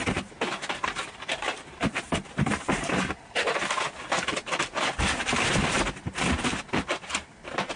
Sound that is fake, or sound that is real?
fake